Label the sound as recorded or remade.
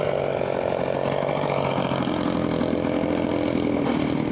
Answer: recorded